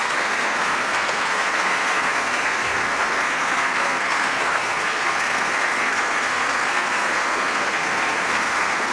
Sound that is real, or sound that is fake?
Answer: fake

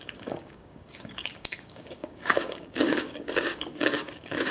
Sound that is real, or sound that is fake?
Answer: fake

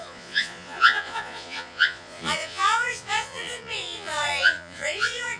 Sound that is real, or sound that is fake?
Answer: fake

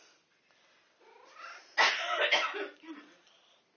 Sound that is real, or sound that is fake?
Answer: real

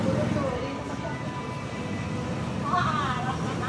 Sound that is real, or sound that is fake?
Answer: real